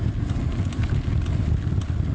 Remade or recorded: recorded